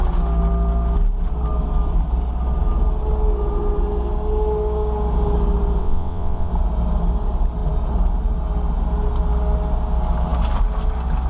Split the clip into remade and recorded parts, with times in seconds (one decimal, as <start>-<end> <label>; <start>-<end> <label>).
0.0-5.8 recorded; 5.8-6.5 remade; 6.5-11.3 recorded